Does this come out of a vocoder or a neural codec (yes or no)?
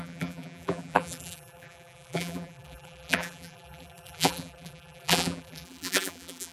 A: yes